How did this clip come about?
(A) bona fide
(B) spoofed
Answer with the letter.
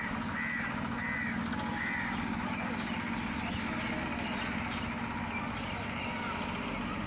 A